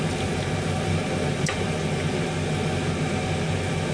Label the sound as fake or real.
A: fake